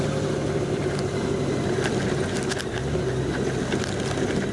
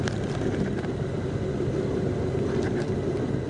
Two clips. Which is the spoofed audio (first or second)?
second